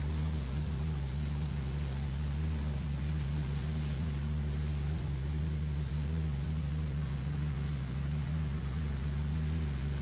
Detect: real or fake fake